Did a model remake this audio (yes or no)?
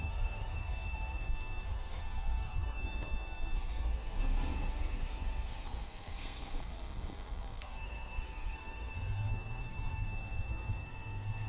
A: yes